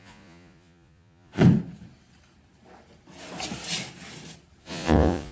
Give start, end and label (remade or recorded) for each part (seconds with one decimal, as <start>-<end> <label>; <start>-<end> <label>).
0.0-1.4 remade; 1.4-4.6 recorded; 4.6-5.3 remade